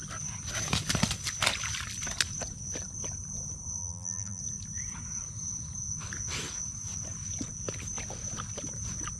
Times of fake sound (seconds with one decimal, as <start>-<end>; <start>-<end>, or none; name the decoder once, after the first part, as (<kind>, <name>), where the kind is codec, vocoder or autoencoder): 3.8-4.4 (vocoder, BigVGAN v2)